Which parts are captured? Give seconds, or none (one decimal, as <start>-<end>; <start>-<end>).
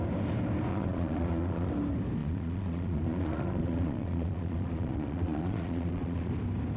0.0-0.7; 1.7-2.2; 6.3-6.8